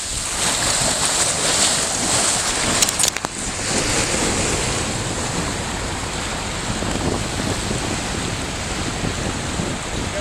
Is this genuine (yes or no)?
yes